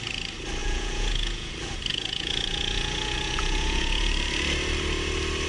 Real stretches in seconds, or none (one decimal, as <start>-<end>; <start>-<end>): 0.0-0.6; 1.5-1.9; 4.1-5.5

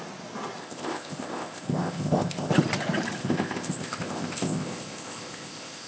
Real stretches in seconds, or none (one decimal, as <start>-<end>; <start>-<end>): 0.0-0.6; 2.5-3.2

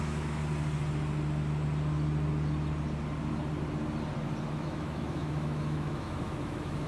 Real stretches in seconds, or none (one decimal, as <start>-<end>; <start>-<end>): 0.4-4.5

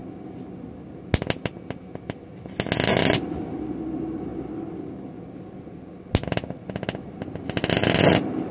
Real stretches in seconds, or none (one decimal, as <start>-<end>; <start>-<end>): 0.0-8.5

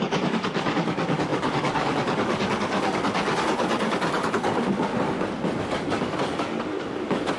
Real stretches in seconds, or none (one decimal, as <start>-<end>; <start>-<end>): 4.9-5.6

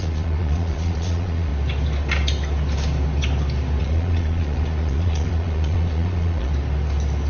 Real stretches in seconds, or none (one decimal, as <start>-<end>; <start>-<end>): 1.5-3.8; 6.5-7.3

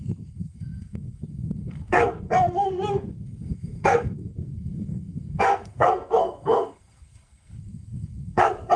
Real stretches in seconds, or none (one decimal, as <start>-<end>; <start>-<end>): none

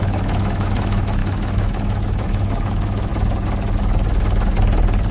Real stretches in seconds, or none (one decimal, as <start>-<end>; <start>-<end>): 3.1-5.1